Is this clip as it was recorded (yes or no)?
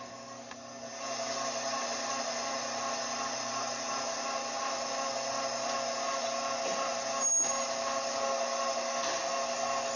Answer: yes